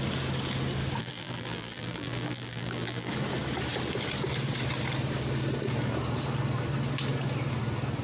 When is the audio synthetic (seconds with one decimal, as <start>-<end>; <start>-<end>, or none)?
1.0-3.1